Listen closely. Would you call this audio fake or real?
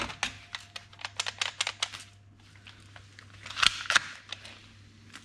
real